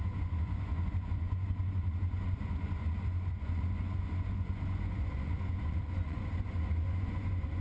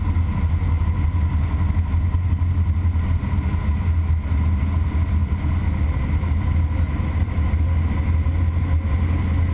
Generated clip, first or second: first